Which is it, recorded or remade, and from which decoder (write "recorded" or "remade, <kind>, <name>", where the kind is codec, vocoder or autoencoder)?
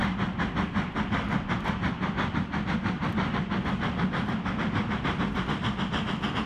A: recorded